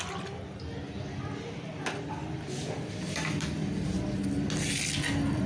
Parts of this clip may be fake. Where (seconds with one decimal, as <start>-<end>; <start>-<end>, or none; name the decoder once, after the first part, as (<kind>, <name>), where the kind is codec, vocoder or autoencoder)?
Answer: none